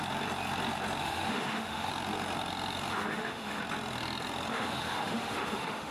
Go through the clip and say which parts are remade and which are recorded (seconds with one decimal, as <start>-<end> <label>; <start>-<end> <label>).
0.0-1.0 recorded; 1.0-1.9 remade; 1.9-2.9 recorded; 2.9-3.6 remade; 3.6-4.5 recorded; 4.5-5.9 remade

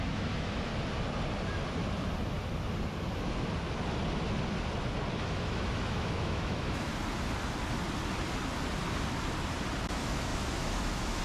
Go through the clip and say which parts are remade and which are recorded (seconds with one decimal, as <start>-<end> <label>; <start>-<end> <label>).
0.0-0.7 remade; 0.7-5.2 recorded; 5.2-6.9 remade; 6.9-9.9 recorded; 9.9-11.2 remade